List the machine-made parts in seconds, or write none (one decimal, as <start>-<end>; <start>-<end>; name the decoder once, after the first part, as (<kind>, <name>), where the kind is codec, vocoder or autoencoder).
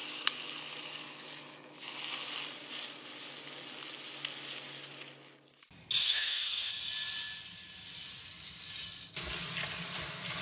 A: 6.0-6.7 (autoencoder, DAC-VAE)